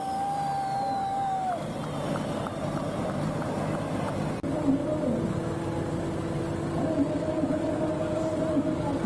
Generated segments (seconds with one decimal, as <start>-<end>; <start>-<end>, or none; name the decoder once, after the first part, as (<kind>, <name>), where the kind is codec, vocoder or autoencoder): 1.0-1.5 (codec, DAC)